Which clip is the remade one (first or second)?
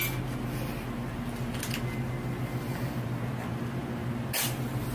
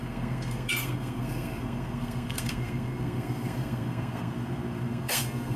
second